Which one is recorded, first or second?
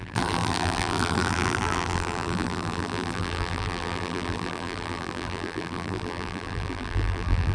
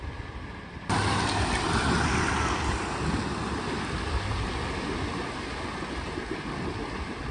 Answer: second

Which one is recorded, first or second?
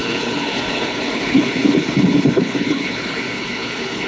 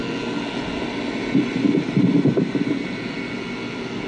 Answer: second